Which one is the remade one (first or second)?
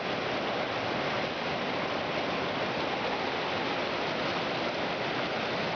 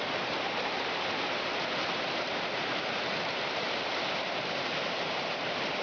second